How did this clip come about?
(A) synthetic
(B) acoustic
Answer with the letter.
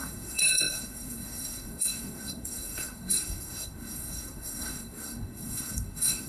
A